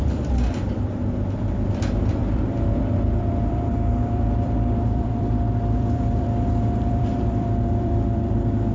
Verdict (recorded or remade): remade